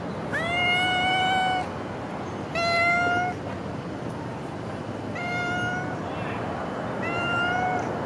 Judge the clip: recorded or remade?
recorded